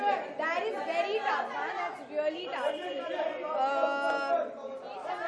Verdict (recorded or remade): recorded